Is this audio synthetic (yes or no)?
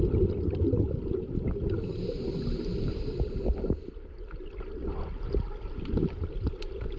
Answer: no